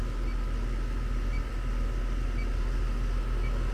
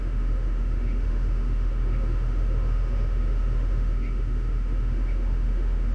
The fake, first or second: second